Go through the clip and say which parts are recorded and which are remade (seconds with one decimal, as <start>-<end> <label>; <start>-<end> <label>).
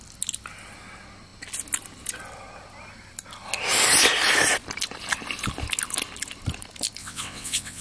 0.0-7.0 recorded; 7.0-7.8 remade